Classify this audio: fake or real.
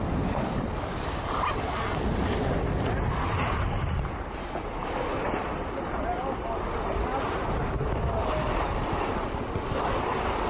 real